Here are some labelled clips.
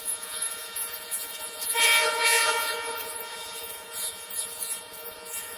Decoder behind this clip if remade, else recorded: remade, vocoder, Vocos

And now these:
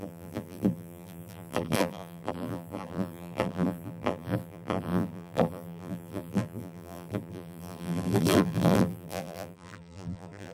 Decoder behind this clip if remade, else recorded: remade, vocoder, BigVGAN v2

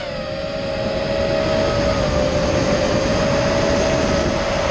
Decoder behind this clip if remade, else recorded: recorded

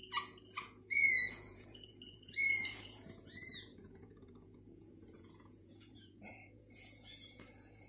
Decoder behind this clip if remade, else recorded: remade, vocoder, Vocos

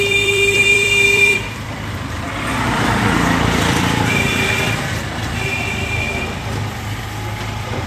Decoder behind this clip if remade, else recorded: remade, vocoder, BigVGAN v2